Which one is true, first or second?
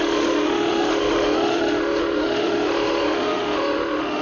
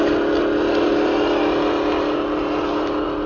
second